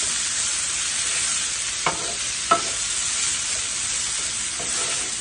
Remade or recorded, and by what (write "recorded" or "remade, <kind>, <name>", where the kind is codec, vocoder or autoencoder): recorded